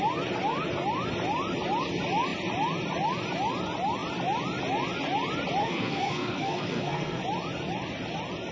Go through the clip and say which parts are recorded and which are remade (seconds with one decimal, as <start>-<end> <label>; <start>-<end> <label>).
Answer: 0.0-5.6 recorded; 5.6-7.2 remade; 7.2-8.5 recorded